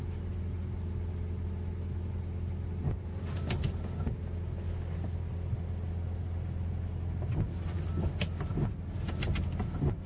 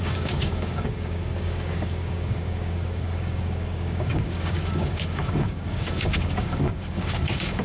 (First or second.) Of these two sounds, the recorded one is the first